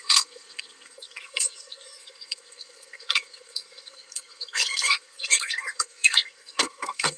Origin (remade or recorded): remade